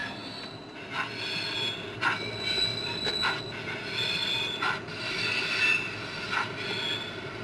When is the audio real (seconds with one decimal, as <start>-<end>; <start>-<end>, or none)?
0.0-7.4